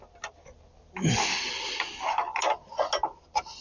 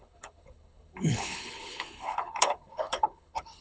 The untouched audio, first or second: first